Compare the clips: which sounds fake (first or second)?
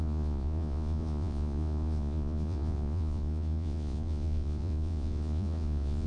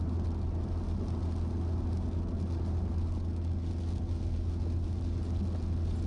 first